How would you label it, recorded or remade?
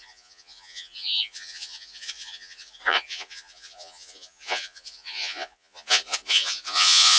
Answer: remade